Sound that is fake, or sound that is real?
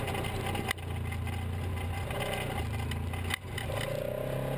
real